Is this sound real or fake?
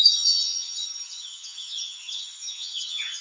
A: fake